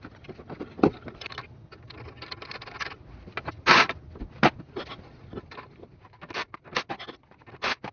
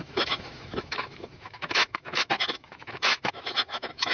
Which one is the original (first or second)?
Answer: first